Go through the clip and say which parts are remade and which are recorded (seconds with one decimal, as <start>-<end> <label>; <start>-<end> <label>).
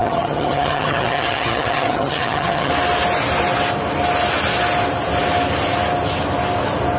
0.0-2.7 remade; 2.7-7.0 recorded